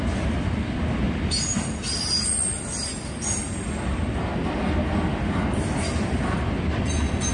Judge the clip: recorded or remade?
recorded